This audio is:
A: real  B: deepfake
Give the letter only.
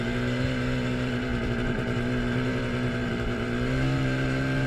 B